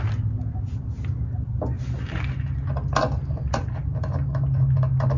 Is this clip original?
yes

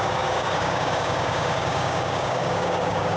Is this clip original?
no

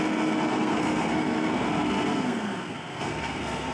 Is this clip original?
no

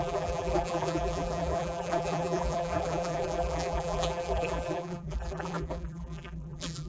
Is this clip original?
no